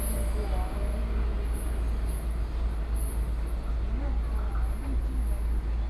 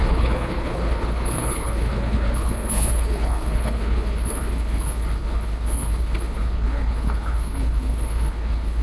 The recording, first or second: first